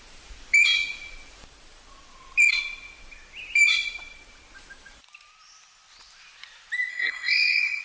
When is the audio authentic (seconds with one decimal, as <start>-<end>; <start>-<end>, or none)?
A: 0.0-6.9